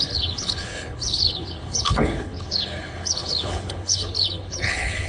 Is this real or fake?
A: fake